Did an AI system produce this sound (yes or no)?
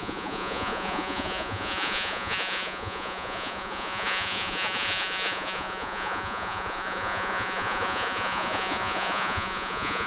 yes